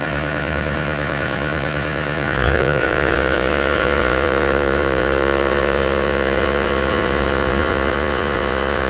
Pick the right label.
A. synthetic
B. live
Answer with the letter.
A